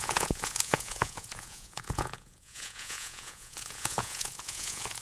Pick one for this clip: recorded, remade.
remade